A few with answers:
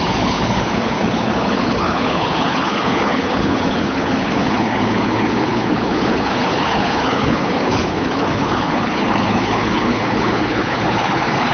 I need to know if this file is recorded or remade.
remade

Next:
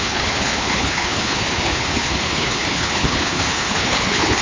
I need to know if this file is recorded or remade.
remade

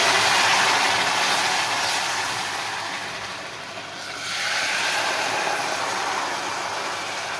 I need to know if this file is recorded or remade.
recorded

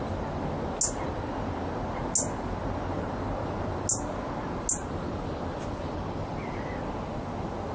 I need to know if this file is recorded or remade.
recorded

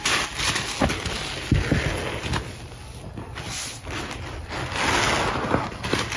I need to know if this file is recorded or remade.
recorded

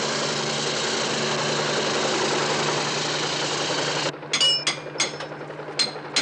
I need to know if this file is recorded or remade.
recorded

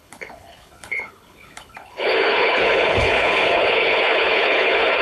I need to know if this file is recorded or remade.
remade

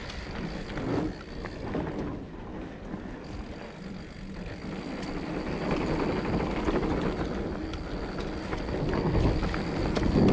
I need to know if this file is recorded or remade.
recorded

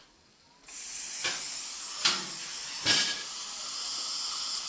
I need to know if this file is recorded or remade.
recorded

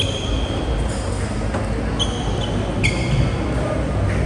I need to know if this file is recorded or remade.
recorded